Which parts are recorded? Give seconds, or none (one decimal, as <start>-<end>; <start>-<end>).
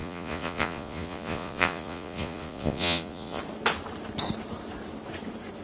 3.4-5.6